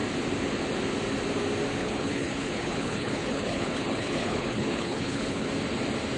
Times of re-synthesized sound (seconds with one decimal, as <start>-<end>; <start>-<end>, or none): 1.8-5.5